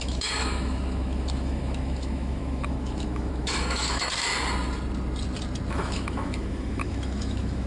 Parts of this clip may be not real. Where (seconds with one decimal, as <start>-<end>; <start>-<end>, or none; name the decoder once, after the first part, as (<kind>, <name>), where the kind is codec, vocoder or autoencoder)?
0.0-4.3 (autoencoder, DAC-VAE); 5.7-7.7